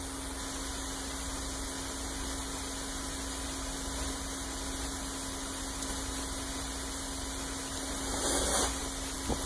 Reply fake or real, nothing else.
real